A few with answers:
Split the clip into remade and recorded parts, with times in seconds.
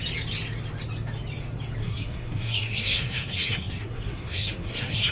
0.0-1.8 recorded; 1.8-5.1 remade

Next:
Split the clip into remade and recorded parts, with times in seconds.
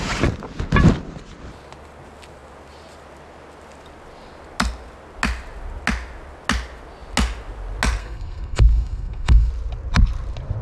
0.0-8.0 recorded; 8.0-9.5 remade; 9.5-10.6 recorded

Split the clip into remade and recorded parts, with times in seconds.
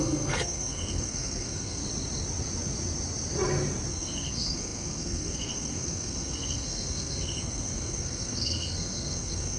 0.0-1.8 remade; 1.8-3.9 recorded; 3.9-9.6 remade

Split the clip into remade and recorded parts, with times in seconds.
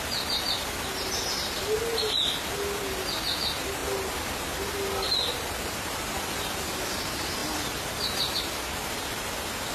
0.0-9.7 recorded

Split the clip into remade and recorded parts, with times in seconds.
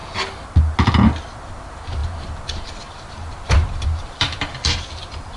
0.0-1.4 recorded; 1.4-5.4 remade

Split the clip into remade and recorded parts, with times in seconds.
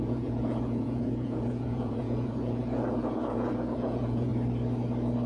0.0-4.3 remade; 4.3-5.3 recorded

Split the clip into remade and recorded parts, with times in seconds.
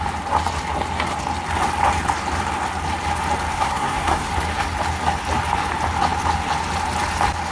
0.0-3.5 recorded; 3.5-4.3 remade; 4.3-7.5 recorded